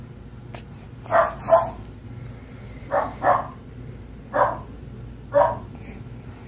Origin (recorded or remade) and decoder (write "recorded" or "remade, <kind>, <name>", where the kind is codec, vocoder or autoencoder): recorded